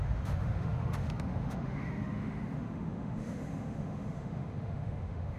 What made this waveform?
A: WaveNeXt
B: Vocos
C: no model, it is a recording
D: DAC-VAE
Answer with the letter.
D